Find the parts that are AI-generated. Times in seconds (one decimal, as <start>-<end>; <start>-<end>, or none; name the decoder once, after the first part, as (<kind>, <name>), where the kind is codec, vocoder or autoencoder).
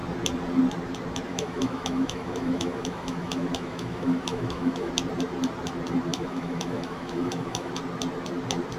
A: 1.3-4.9 (autoencoder, DAC-VAE); 6.1-7.7